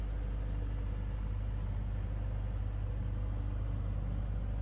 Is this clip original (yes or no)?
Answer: yes